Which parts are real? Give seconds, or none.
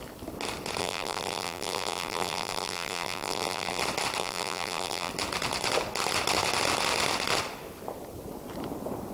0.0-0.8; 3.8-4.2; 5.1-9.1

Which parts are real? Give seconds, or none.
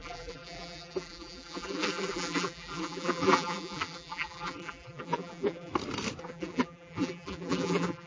5.7-6.2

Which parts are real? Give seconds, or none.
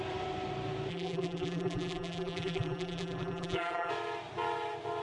0.0-0.9; 3.9-5.0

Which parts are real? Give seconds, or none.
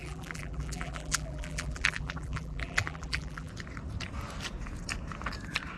3.5-5.8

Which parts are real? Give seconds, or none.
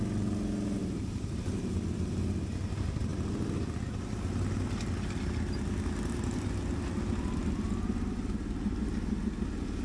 0.0-0.8; 2.4-9.8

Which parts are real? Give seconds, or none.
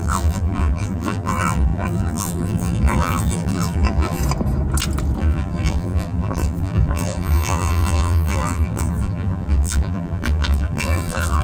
4.2-5.2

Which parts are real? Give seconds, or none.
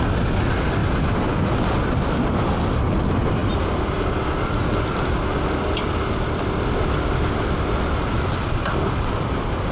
0.0-9.7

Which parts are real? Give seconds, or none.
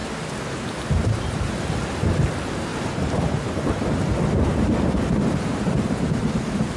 0.0-5.5; 6.2-6.8